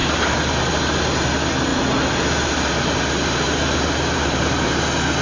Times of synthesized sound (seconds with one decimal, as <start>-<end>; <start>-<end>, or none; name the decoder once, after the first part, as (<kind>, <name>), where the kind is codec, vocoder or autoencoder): 1.7-4.8 (vocoder, BigVGAN v2)